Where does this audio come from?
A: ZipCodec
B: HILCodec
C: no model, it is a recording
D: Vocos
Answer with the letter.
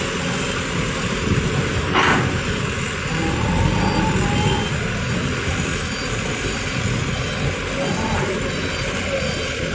C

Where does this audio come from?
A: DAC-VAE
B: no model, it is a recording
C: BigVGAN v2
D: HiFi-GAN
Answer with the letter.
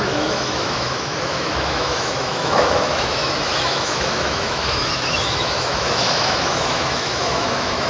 A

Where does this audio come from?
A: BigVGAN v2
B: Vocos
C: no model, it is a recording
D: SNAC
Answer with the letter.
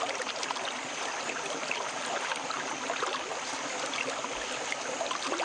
C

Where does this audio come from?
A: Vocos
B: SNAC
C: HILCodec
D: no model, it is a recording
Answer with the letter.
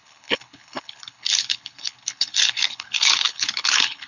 C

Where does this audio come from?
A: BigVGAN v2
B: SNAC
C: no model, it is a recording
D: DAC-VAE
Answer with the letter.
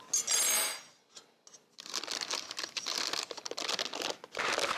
C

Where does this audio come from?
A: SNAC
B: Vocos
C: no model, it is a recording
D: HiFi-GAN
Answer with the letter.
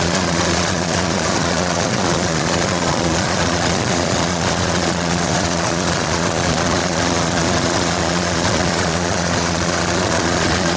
B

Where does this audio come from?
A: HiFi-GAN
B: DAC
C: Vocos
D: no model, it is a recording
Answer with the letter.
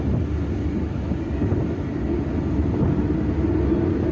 D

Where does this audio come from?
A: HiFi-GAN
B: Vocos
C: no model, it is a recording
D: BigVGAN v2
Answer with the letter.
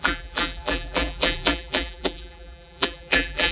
D